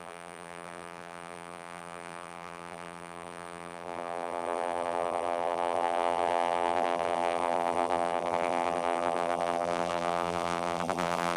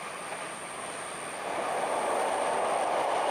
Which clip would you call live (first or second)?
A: second